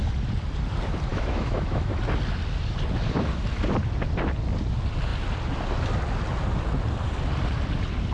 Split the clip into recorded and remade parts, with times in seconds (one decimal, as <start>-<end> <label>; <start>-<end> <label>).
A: 0.0-1.1 recorded; 1.1-2.0 remade; 2.0-8.1 recorded